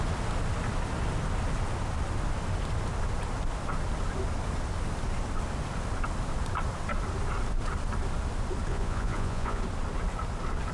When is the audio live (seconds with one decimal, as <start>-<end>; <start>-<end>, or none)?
0.0-8.7; 9.6-10.7